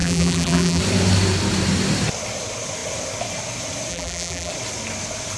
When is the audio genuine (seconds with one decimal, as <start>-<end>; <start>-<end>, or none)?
0.8-3.9; 4.5-5.4